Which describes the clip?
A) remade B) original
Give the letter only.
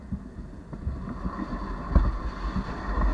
B